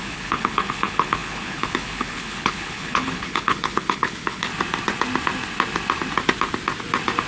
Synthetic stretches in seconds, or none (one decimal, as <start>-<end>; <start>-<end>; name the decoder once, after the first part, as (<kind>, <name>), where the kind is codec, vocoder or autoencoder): 0.0-4.5 (codec, HILCodec)